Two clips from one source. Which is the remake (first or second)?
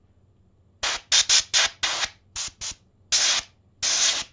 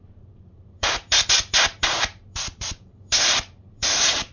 second